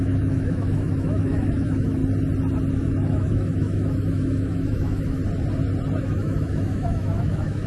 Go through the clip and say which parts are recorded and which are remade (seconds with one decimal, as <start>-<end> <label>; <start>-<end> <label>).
0.0-2.0 remade; 2.0-2.7 recorded; 2.7-5.2 remade; 5.2-6.0 recorded; 6.0-7.7 remade